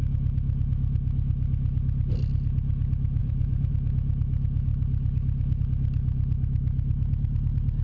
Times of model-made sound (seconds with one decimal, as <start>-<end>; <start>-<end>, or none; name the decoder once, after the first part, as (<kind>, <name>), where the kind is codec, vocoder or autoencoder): 3.2-3.7 (vocoder, Vocos)